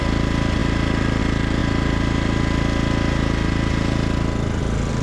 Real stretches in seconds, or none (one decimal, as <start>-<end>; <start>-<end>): 0.0-5.0

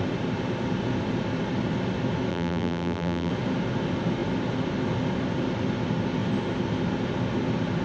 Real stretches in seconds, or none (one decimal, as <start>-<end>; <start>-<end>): 0.0-2.3; 3.3-7.8

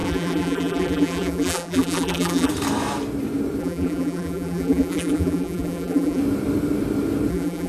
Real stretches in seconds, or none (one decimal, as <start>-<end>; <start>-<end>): 2.5-3.6; 6.2-7.3

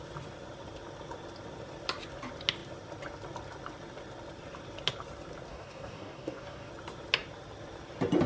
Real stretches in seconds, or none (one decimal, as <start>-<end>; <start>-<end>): 0.0-5.5; 6.7-8.3